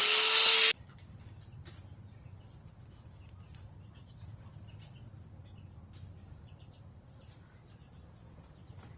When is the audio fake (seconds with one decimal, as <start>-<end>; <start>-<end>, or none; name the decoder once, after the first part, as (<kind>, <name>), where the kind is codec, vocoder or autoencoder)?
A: none